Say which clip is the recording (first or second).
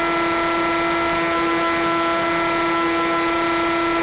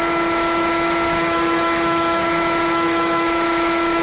first